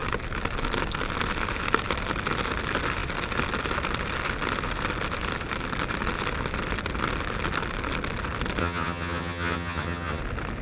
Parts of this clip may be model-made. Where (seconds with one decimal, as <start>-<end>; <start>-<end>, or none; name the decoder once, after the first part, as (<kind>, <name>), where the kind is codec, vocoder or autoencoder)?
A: 8.6-10.2 (vocoder, HiFi-GAN)